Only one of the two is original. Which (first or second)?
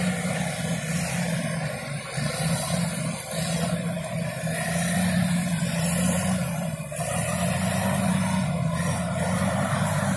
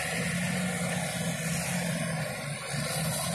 second